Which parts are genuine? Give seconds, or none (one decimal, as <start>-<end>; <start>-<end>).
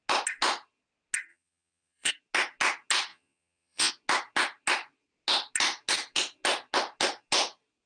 0.0-1.3; 2.1-3.1; 3.9-7.9